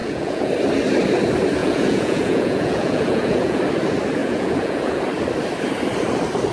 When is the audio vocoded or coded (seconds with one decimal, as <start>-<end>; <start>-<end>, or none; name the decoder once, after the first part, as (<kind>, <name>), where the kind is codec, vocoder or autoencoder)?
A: 0.0-0.5 (vocoder, Vocos); 1.6-3.6; 4.2-5.0